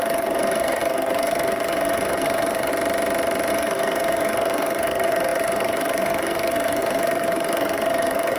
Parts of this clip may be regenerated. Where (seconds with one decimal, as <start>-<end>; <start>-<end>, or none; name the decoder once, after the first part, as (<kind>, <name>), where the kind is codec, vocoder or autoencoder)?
0.0-2.7 (codec, SNAC); 3.5-8.4